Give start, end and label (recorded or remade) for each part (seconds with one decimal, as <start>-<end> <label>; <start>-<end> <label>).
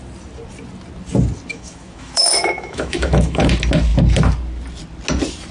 0.0-1.5 recorded; 1.5-3.4 remade; 3.4-5.5 recorded